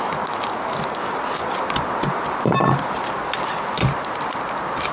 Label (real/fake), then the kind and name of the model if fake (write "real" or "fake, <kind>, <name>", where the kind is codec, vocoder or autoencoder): real